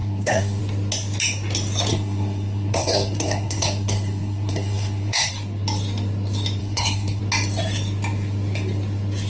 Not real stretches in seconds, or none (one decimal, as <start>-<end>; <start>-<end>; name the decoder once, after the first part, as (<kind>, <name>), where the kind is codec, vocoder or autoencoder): 0.0-0.6 (codec, SNAC); 1.9-5.3; 6.6-7.2